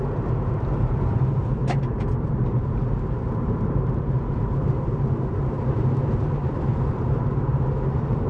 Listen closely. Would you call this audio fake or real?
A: fake